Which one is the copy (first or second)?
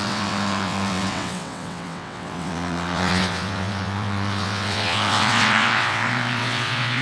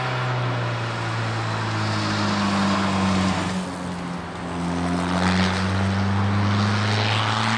first